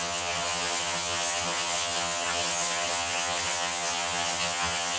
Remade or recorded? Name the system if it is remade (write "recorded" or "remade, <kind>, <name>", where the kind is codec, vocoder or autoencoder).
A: remade, vocoder, HiFi-GAN